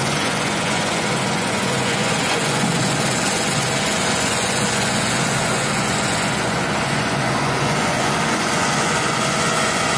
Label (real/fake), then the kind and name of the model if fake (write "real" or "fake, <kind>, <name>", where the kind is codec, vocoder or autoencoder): fake, vocoder, Vocos